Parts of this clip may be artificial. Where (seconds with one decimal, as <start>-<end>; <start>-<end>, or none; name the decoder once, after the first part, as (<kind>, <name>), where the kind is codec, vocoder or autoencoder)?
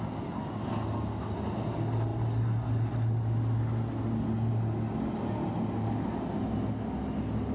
none